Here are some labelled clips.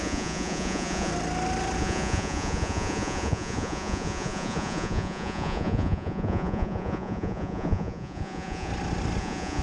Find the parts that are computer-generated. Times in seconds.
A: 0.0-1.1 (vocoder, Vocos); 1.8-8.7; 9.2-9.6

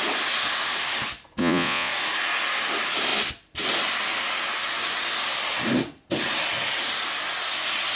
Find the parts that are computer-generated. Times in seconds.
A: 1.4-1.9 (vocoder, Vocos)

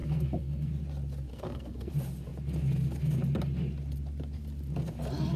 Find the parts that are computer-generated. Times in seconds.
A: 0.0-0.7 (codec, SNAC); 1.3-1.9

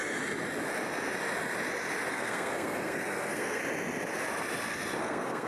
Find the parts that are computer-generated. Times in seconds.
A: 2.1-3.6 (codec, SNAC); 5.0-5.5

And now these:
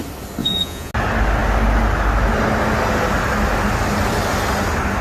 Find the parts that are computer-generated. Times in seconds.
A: 0.4-0.9 (vocoder, Vocos)

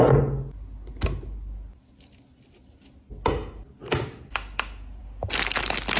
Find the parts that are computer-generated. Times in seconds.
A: none

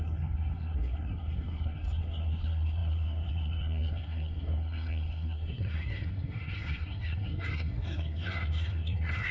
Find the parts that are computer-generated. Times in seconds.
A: 0.0-9.3 (codec, SNAC)

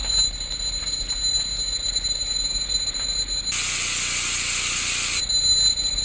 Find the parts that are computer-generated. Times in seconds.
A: none